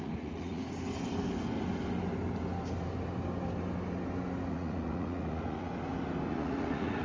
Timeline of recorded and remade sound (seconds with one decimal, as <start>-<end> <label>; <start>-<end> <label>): 0.0-0.6 remade; 0.6-4.5 recorded; 4.5-5.7 remade; 5.7-6.3 recorded; 6.3-7.0 remade